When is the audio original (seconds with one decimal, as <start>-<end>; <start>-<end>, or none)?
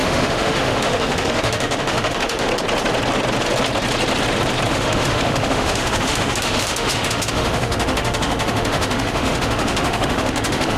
2.5-4.7